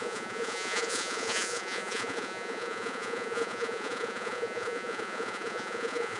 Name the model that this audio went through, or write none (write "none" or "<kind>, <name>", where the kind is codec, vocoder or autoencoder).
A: vocoder, Vocos